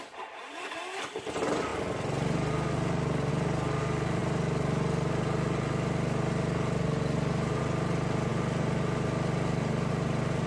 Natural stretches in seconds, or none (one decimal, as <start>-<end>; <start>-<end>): 0.0-10.5

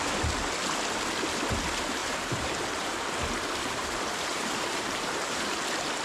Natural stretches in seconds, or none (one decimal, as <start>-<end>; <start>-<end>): 0.0-2.0; 5.6-6.0

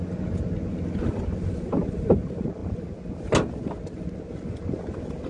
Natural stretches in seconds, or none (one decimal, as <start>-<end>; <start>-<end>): 0.0-5.3

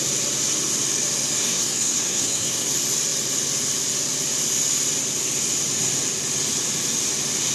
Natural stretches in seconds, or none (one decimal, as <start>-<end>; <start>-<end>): 0.0-1.4; 2.7-7.5

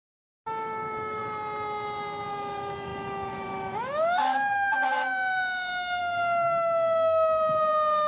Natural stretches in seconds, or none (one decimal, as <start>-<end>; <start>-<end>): 1.2-2.3